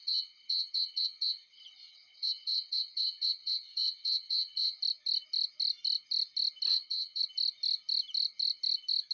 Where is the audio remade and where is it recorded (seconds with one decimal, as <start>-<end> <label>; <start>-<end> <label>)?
0.0-4.8 remade; 4.8-6.7 recorded; 6.7-7.2 remade; 7.2-9.1 recorded